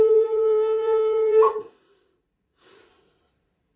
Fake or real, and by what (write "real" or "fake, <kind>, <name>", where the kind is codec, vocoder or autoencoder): fake, vocoder, Vocos